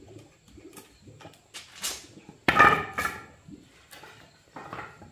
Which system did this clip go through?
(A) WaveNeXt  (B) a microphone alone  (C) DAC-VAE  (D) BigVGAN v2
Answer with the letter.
B